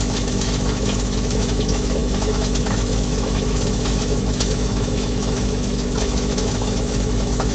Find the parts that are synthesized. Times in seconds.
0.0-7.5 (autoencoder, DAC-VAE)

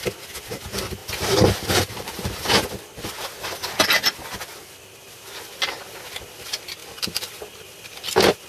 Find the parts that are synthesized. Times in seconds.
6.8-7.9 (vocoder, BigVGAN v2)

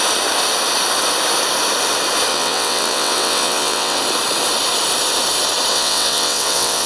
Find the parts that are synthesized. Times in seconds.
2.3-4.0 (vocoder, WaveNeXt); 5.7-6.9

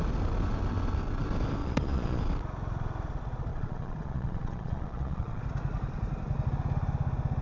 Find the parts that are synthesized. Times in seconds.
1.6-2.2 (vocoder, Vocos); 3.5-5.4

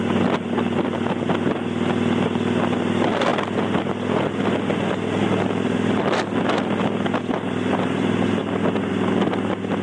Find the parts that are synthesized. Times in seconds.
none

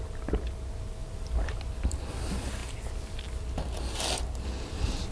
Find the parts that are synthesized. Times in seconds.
1.0-2.1 (vocoder, BigVGAN v2)